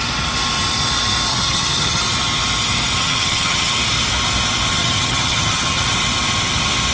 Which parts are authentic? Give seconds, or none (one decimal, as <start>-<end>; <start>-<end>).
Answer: 0.0-1.3; 2.0-3.0; 3.7-4.8; 5.8-6.9